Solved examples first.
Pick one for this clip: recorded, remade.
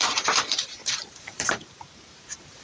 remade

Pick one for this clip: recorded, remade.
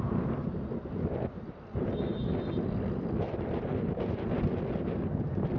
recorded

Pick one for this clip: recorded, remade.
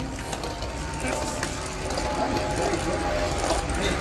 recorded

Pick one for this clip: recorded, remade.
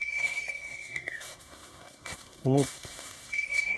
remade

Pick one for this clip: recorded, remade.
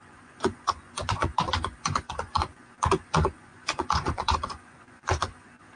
remade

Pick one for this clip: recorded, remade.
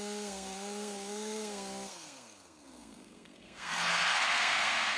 remade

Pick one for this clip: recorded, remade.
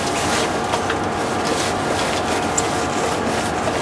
recorded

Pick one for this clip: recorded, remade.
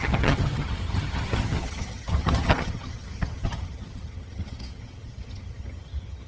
remade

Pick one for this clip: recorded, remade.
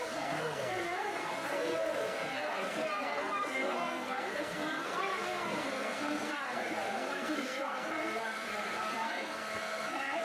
remade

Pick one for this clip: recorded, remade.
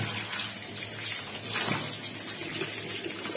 recorded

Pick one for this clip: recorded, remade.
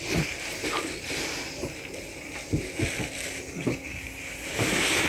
recorded